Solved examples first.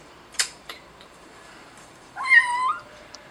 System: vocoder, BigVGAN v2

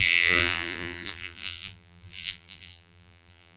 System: vocoder, BigVGAN v2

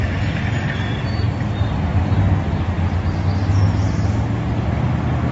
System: none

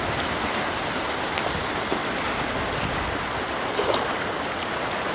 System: none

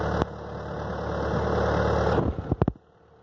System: none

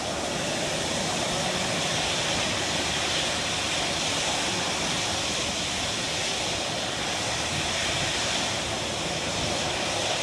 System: none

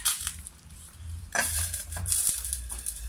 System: vocoder, BigVGAN v2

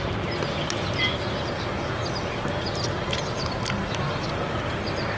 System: none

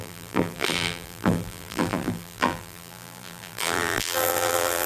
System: vocoder, BigVGAN v2